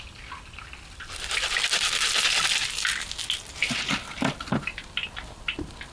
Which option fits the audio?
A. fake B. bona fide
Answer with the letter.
B